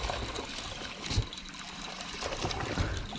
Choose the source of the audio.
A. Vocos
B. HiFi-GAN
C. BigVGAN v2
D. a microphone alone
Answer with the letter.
D